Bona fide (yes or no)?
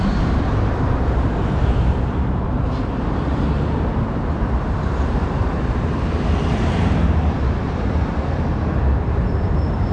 no